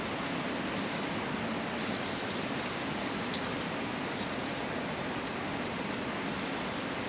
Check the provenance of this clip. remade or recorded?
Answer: recorded